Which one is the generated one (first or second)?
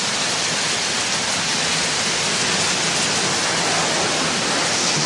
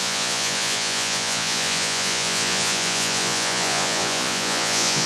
second